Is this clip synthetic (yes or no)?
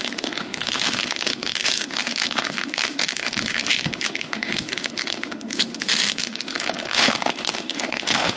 yes